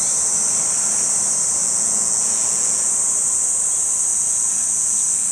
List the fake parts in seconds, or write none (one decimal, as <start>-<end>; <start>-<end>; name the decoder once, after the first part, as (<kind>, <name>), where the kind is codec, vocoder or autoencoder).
1.6-2.9 (vocoder, Vocos); 4.1-5.3